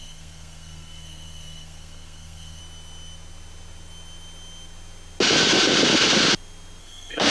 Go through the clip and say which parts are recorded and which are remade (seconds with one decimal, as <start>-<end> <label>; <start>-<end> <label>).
0.0-2.6 remade; 2.6-6.8 recorded; 6.8-7.3 remade